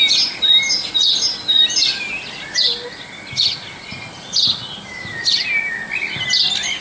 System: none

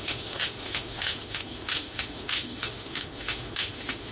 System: autoencoder, DAC-VAE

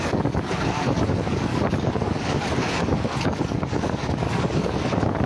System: codec, DAC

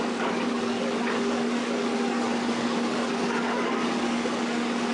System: codec, DAC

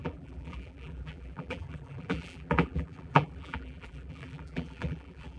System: vocoder, BigVGAN v2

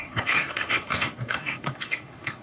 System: codec, SNAC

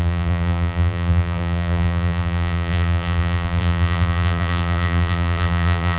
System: vocoder, BigVGAN v2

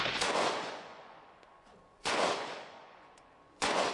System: vocoder, Vocos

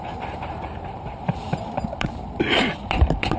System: vocoder, BigVGAN v2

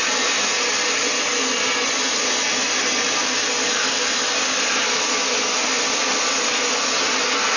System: none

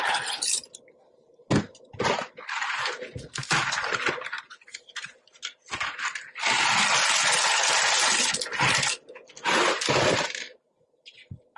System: none